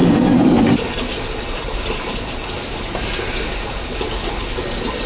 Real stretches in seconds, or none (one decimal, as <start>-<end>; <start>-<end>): 0.0-5.1

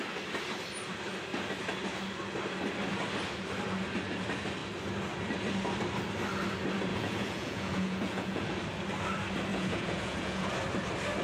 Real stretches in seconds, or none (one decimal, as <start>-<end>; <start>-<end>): 0.0-6.9; 8.5-9.5; 10.5-11.2

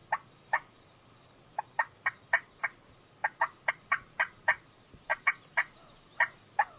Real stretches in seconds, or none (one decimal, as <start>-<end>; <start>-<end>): 2.5-6.8

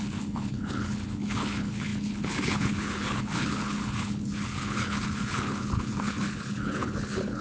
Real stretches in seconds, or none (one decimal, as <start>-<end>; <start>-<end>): none

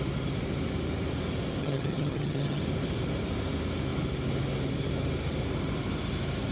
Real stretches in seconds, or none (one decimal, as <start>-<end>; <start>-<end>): 0.0-1.6; 2.6-6.5

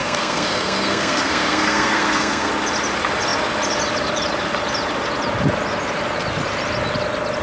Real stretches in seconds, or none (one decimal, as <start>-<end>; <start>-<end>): 2.5-7.4

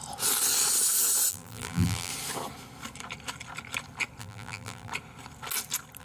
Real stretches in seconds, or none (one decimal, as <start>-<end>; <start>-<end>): 0.0-1.3; 2.1-4.2; 4.9-6.0